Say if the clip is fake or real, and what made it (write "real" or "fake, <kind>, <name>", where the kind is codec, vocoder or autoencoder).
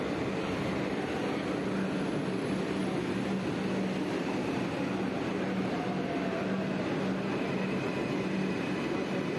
real